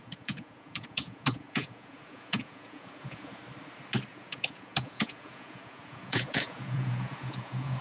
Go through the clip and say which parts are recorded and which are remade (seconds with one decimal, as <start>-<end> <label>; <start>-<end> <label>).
0.0-3.4 remade; 3.4-4.1 recorded; 4.1-7.8 remade